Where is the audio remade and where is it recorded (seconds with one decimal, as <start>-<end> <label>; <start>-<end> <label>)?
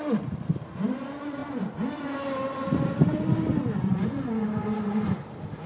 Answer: 0.0-5.7 recorded